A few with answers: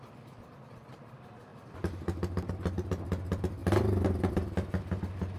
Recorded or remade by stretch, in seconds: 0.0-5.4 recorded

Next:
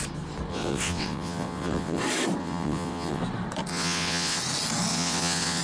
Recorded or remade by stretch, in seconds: 0.0-0.5 recorded; 0.5-2.0 remade; 2.0-2.4 recorded; 2.4-3.2 remade; 3.2-3.7 recorded; 3.7-4.4 remade; 4.4-4.9 recorded; 4.9-5.6 remade

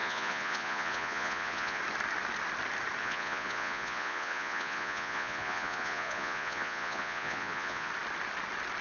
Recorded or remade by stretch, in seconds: 0.0-1.8 remade; 1.8-3.0 recorded; 3.0-7.9 remade; 7.9-8.8 recorded